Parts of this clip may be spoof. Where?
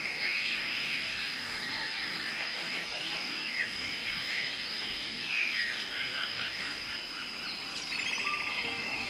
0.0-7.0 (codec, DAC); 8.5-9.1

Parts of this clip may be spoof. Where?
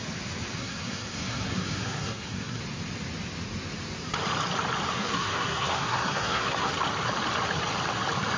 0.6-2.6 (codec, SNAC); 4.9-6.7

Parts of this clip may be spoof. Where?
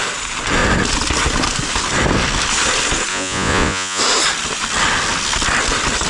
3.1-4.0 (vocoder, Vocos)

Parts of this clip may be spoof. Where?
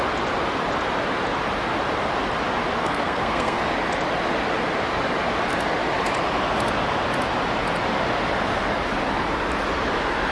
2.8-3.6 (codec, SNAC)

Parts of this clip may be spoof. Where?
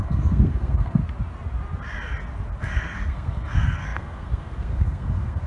0.0-1.0 (codec, SNAC); 2.6-5.5